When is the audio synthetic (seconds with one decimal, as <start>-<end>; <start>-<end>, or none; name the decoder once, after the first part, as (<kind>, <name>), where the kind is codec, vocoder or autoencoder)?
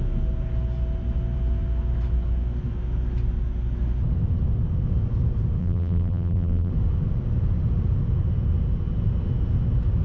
5.6-6.7 (vocoder, BigVGAN v2)